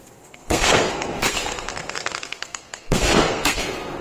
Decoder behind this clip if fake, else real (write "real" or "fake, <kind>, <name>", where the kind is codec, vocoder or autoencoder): fake, codec, SNAC